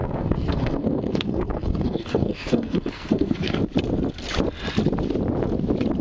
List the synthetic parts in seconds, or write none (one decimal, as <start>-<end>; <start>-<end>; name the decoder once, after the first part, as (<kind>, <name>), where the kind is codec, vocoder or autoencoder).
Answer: 0.0-3.6 (codec, SNAC)